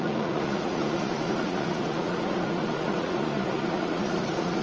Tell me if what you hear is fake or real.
fake